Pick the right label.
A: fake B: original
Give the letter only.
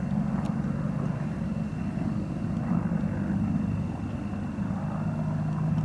B